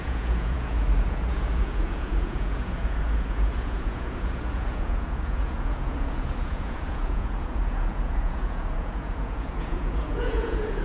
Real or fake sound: fake